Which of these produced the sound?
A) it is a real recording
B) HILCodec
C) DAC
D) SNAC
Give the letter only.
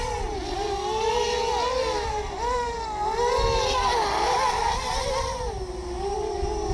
A